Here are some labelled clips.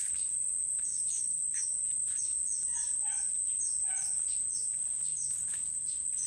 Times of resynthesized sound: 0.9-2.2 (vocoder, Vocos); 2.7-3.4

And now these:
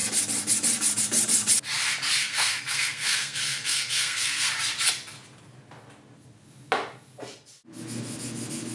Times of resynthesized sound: 2.2-4.5 (codec, SNAC)

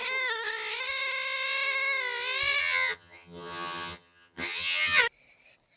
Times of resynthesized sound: 2.6-5.0 (vocoder, HiFi-GAN)

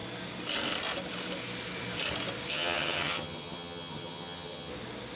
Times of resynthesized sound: 2.5-4.7 (vocoder, HiFi-GAN)